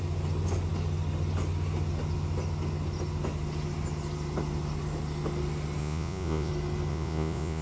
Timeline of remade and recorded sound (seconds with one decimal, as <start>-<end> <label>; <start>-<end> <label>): 0.0-5.8 recorded; 5.8-6.5 remade; 6.5-6.9 recorded; 6.9-7.6 remade